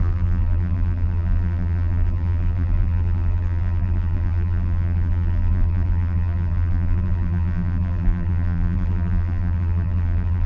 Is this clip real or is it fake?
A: fake